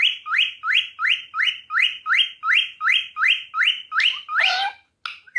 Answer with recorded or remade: recorded